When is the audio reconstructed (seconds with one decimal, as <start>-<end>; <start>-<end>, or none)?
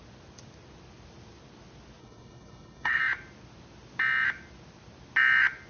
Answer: 2.0-3.0